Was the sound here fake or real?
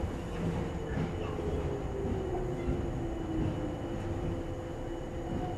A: real